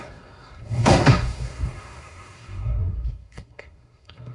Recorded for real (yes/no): no